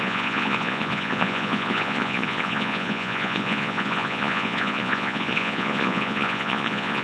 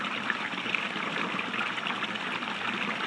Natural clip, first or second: second